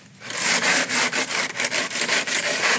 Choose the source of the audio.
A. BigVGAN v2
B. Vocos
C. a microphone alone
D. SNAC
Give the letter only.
A